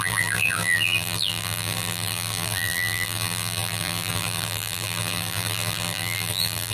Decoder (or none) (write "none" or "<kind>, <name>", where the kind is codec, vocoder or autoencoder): vocoder, BigVGAN v2